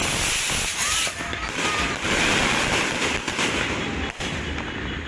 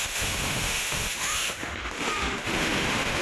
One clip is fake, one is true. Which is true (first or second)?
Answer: first